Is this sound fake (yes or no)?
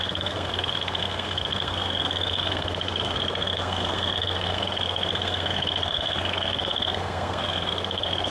yes